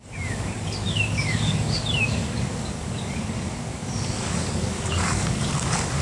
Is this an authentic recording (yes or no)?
no